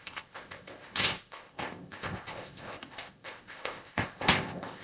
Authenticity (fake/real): fake